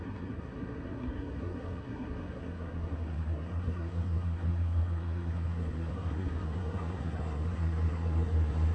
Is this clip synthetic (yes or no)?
yes